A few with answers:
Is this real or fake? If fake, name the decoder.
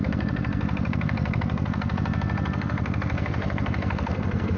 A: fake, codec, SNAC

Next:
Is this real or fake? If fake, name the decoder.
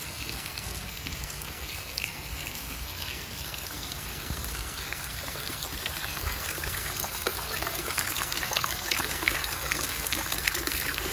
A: fake, codec, SNAC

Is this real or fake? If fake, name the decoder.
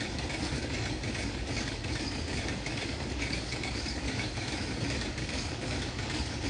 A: fake, codec, DAC